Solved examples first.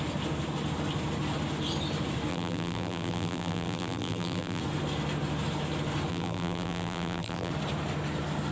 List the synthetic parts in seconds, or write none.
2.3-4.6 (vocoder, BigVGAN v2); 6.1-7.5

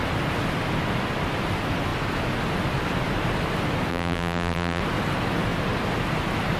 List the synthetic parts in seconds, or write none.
3.9-4.8 (vocoder, BigVGAN v2)

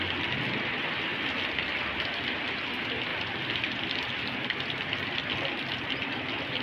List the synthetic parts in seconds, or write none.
1.1-2.4 (vocoder, BigVGAN v2); 3.1-3.8

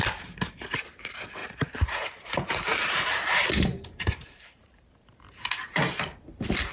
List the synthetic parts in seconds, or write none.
1.4-5.4 (vocoder, BigVGAN v2)